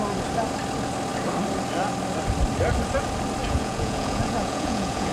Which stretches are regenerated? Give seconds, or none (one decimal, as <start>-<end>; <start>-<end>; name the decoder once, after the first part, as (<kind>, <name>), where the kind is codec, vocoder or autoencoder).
3.4-5.1 (vocoder, Vocos)